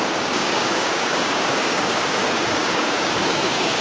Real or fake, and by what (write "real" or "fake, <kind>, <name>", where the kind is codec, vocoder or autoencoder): fake, codec, DAC